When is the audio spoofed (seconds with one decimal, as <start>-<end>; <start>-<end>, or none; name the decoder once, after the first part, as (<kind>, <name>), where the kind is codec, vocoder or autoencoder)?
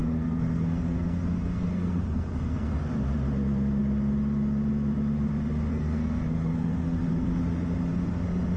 0.0-2.8 (codec, SNAC); 5.7-7.4